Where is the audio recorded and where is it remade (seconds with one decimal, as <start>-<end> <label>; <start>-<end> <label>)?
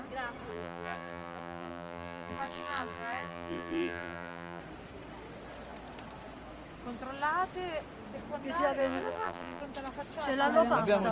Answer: 0.0-0.5 recorded; 0.5-4.6 remade; 4.6-8.8 recorded; 8.8-9.6 remade; 9.6-11.1 recorded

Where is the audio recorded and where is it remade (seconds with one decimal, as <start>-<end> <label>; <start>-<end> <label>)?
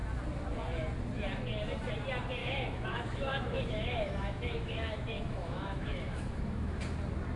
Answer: 0.0-2.4 recorded; 2.4-6.8 remade; 6.8-7.4 recorded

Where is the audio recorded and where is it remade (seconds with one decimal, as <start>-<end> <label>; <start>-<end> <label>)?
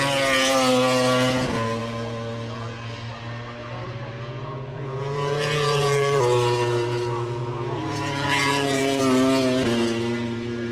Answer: 0.0-3.6 recorded; 3.6-6.2 remade; 6.2-7.4 recorded; 7.4-9.0 remade; 9.0-10.7 recorded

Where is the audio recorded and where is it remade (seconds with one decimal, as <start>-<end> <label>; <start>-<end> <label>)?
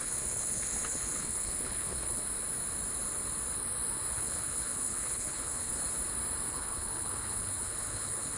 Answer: 0.0-2.2 remade; 2.2-4.1 recorded; 4.1-5.7 remade; 5.7-6.5 recorded; 6.5-8.4 remade